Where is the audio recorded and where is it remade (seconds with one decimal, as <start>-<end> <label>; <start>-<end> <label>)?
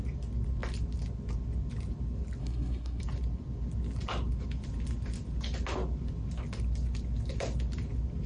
0.0-2.4 recorded; 2.4-3.0 remade; 3.0-8.3 recorded